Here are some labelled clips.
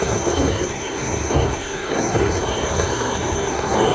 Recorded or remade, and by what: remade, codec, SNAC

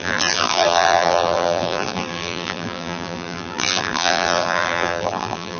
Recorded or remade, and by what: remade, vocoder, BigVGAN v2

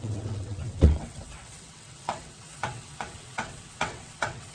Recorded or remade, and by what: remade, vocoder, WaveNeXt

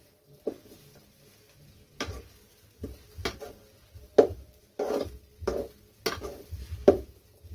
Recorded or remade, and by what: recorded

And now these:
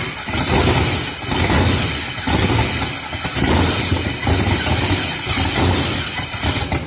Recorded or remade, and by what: recorded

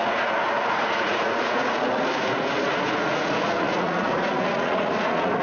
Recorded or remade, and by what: remade, vocoder, Vocos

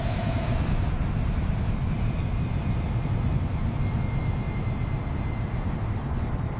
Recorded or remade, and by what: recorded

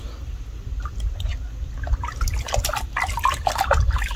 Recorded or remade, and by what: recorded